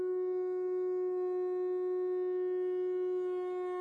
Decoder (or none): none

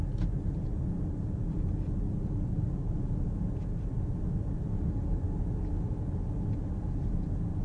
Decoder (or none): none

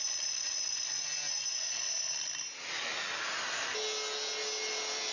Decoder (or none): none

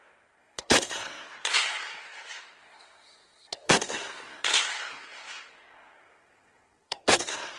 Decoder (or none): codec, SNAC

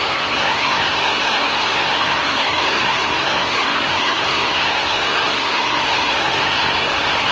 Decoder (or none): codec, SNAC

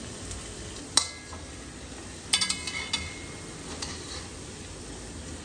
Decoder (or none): none